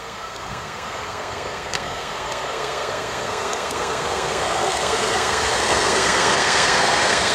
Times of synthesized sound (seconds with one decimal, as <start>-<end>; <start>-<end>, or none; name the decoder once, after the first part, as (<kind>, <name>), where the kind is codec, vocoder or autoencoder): 0.0-7.3 (codec, SNAC)